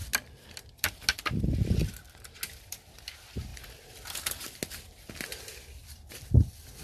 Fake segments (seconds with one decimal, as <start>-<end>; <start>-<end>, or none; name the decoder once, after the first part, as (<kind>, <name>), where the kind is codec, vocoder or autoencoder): none